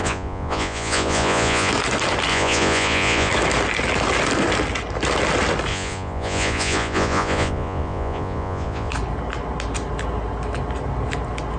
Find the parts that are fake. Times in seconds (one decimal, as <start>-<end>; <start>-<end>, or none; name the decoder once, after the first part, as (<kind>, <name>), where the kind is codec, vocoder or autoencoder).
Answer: 0.0-1.7 (vocoder, Vocos); 2.3-3.3; 5.7-8.9